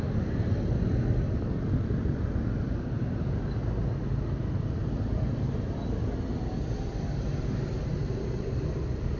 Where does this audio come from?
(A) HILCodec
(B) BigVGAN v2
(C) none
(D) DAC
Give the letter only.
C